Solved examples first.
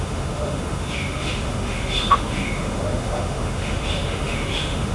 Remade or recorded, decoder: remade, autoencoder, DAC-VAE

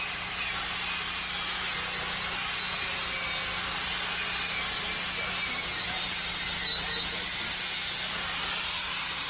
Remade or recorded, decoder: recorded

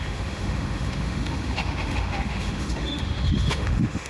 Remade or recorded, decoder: remade, autoencoder, DAC-VAE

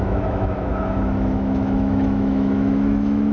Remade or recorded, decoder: remade, autoencoder, DAC-VAE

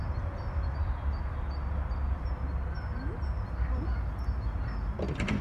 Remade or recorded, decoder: recorded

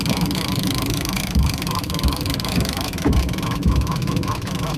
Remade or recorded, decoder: remade, autoencoder, DAC-VAE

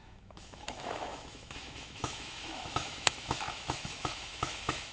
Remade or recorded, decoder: remade, autoencoder, DAC-VAE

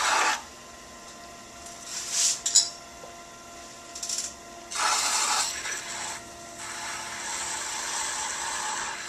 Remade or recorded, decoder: recorded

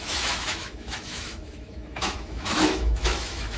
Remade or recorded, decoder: remade, autoencoder, DAC-VAE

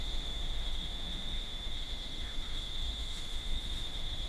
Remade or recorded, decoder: remade, autoencoder, DAC-VAE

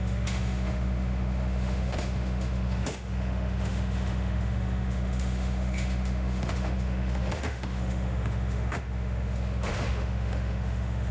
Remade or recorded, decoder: remade, autoencoder, DAC-VAE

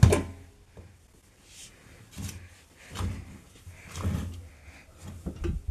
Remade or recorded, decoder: recorded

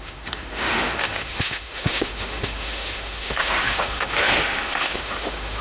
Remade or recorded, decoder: remade, autoencoder, DAC-VAE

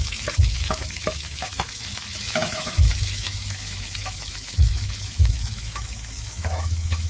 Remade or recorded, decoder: remade, autoencoder, DAC-VAE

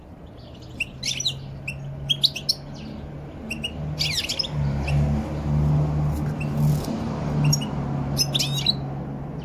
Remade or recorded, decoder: recorded